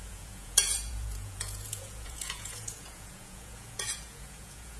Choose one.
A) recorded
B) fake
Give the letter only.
B